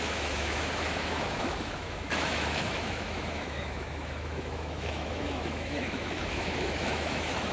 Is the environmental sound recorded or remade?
remade